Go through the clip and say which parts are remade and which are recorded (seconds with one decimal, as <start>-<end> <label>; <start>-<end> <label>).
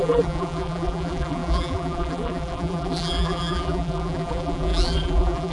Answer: 0.0-5.5 remade